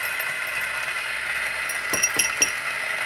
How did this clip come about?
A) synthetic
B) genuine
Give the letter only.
B